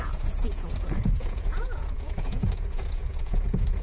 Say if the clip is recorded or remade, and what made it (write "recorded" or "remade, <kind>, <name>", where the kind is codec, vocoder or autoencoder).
remade, vocoder, Vocos